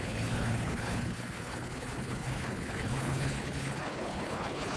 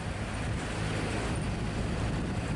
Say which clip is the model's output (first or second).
first